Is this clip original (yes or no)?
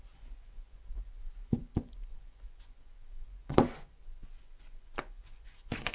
no